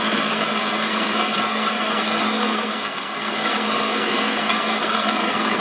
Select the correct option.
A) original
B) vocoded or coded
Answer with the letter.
B